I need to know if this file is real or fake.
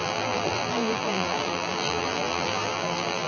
fake